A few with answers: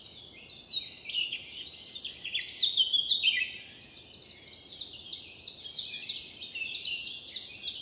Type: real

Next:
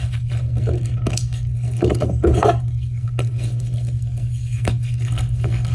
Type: fake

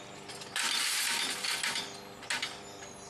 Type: real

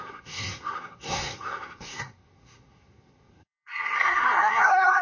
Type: fake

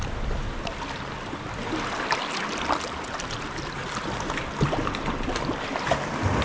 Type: real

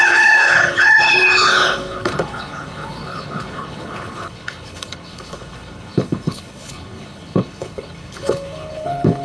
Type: fake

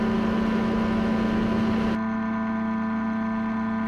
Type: real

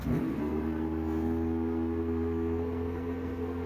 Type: fake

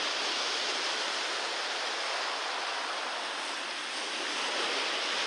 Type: real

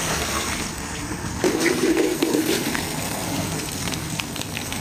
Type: fake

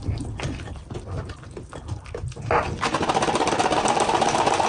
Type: real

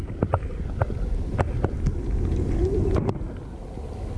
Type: real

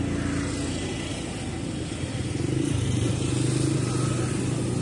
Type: real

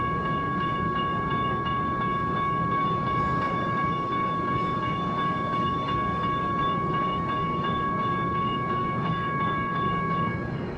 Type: fake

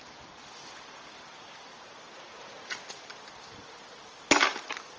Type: real